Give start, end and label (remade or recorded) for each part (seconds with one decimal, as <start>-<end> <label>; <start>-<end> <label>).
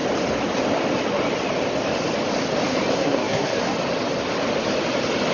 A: 0.0-2.9 recorded; 2.9-3.5 remade; 3.5-5.3 recorded